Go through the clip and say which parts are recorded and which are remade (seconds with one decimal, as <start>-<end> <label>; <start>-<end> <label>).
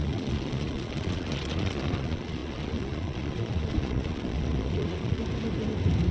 0.0-5.2 remade; 5.2-6.1 recorded